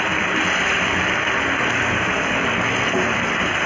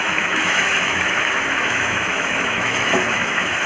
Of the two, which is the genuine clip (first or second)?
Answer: first